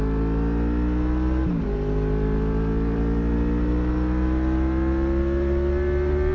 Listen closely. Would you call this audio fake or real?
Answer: real